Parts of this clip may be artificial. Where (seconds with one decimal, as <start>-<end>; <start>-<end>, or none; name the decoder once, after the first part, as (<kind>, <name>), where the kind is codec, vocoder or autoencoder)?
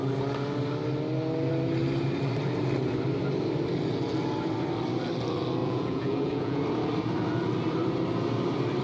5.6-6.6 (vocoder, Vocos)